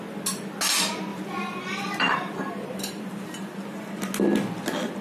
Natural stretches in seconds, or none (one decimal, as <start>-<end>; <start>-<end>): 0.0-1.1; 3.0-5.0